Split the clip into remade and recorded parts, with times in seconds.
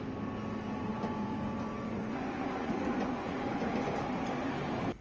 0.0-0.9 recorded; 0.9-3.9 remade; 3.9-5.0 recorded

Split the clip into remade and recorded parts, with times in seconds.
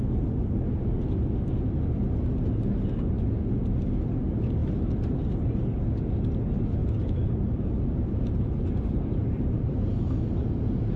0.0-6.8 recorded; 6.8-9.8 remade; 9.8-11.0 recorded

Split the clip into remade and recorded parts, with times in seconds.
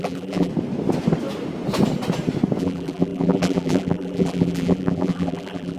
0.0-0.5 remade; 0.5-2.6 recorded; 2.6-5.8 remade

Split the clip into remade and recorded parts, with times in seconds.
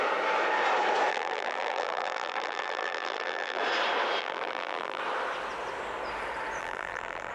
0.0-1.1 recorded; 1.1-3.6 remade; 3.6-4.2 recorded; 4.2-5.0 remade; 5.0-6.6 recorded; 6.6-7.3 remade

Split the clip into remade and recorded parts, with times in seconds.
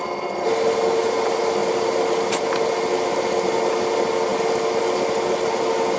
0.0-6.0 recorded